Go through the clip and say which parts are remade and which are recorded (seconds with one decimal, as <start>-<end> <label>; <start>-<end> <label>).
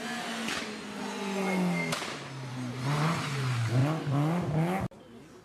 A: 0.0-5.4 recorded